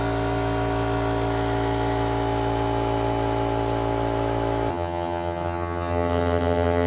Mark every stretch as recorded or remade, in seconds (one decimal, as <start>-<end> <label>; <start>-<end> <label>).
0.0-4.7 recorded; 4.7-6.9 remade